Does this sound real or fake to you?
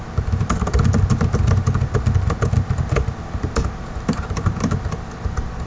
real